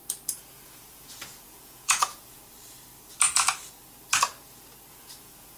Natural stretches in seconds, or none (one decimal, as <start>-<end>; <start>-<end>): 0.0-0.5; 2.4-4.9